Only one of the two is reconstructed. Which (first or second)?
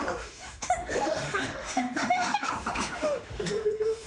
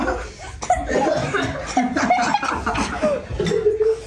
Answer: first